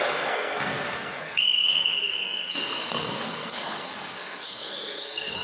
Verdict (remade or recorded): remade